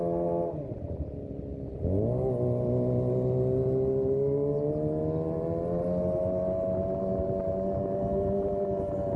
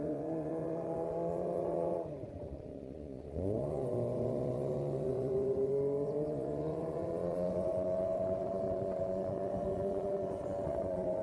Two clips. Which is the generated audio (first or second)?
second